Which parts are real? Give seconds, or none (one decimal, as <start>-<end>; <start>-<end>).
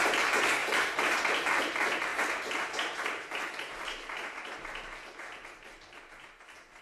0.0-6.8